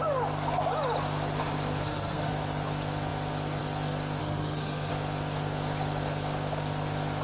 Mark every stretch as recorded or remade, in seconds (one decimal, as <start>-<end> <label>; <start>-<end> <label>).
0.0-1.8 recorded; 1.8-2.3 remade; 2.3-4.2 recorded; 4.2-4.9 remade; 4.9-7.2 recorded